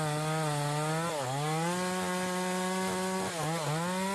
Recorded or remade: recorded